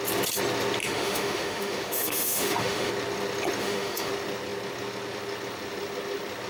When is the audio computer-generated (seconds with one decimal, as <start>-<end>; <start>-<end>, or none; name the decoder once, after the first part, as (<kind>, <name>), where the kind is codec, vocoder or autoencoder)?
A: 0.8-2.9 (autoencoder, DAC-VAE); 3.6-4.1